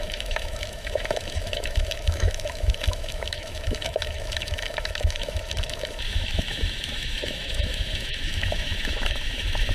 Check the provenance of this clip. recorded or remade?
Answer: remade